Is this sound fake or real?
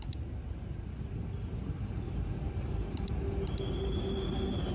real